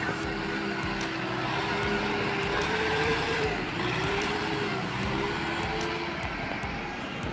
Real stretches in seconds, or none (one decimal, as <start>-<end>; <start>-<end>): 0.0-2.6; 4.4-7.3

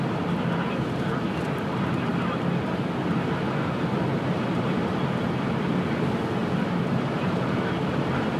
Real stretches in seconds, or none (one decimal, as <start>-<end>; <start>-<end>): 0.0-8.4

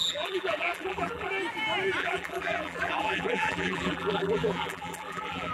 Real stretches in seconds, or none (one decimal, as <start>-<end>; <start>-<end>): 1.3-2.0

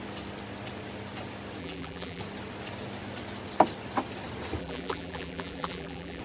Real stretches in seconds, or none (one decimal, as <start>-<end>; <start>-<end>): 0.0-1.6; 2.2-4.6

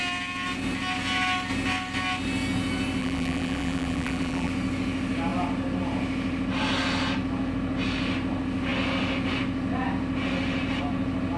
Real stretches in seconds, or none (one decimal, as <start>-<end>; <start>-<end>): 0.0-3.0; 4.5-11.4

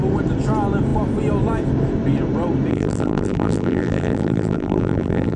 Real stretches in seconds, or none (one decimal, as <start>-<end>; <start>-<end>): 0.0-2.7